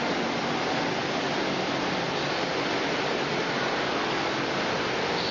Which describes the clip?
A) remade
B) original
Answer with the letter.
B